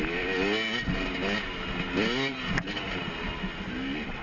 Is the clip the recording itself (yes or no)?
yes